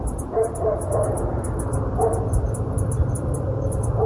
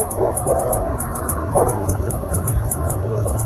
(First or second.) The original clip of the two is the first